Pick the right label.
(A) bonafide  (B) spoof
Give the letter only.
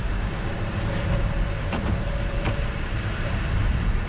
B